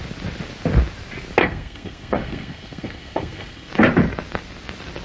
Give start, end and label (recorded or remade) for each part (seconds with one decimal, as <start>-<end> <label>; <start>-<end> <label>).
0.0-1.4 recorded; 1.4-3.7 remade; 3.7-5.0 recorded